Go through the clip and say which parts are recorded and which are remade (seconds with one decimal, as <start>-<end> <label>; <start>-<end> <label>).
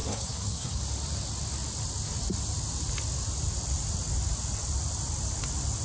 0.0-0.8 remade; 0.8-5.8 recorded